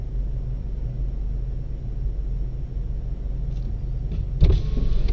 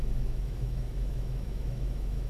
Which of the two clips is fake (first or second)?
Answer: second